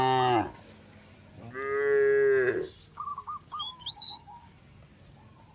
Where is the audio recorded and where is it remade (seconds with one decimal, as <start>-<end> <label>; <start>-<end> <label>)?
0.0-2.9 recorded; 2.9-4.5 remade; 4.5-5.5 recorded